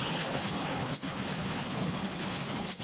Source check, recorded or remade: remade